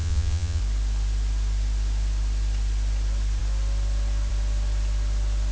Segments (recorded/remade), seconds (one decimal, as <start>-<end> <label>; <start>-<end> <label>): 0.0-0.6 remade; 0.6-5.5 recorded